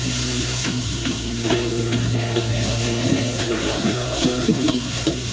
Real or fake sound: fake